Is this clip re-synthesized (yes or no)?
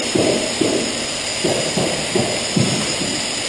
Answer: no